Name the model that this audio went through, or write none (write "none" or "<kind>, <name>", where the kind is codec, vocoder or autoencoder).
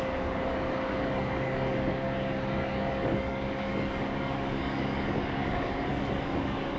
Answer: codec, DAC